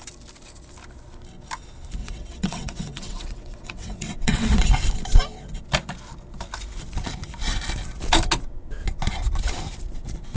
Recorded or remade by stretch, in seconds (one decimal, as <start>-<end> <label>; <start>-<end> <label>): 0.0-2.0 recorded; 2.0-4.7 remade; 4.7-10.4 recorded